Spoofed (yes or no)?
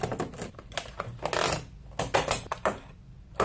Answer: no